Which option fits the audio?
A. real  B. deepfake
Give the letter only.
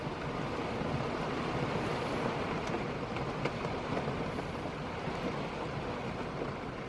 A